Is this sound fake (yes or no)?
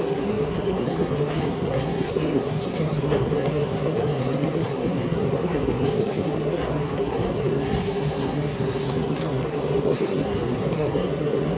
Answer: yes